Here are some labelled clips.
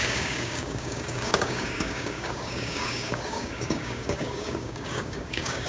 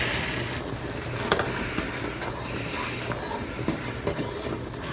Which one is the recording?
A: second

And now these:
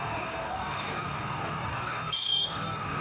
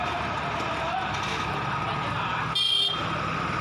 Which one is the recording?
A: second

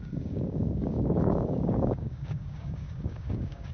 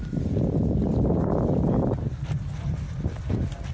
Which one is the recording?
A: second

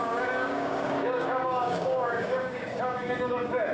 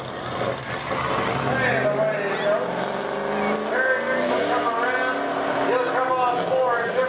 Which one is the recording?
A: second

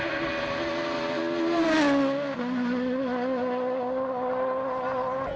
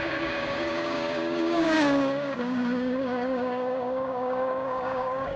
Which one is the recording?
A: first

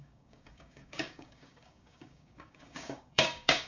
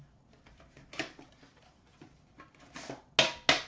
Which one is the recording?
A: second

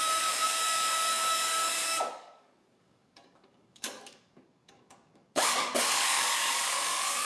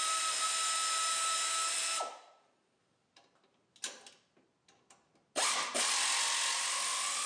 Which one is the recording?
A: second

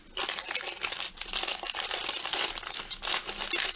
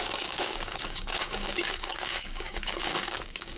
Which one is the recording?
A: first